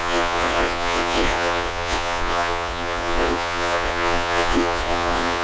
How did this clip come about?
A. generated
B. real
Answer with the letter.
A